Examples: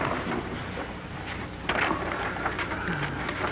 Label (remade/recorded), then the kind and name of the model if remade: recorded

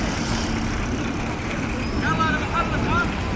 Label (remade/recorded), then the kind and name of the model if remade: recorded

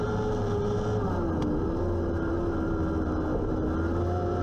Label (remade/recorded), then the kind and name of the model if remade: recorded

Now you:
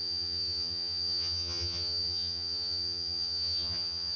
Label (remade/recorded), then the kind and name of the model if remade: remade, vocoder, HiFi-GAN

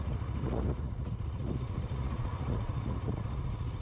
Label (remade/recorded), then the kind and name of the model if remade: remade, vocoder, Vocos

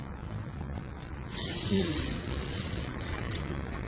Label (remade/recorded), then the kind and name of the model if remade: remade, vocoder, WaveNeXt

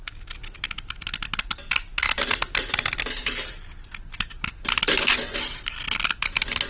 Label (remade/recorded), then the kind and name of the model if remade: recorded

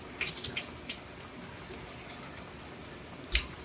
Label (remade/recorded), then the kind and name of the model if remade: recorded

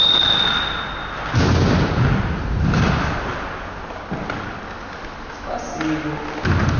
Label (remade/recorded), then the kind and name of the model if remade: recorded